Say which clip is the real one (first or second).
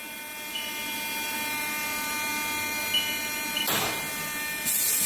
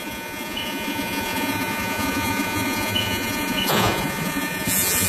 first